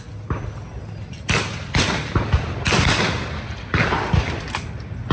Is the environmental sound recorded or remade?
recorded